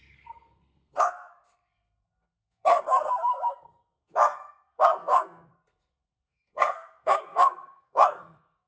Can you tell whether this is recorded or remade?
remade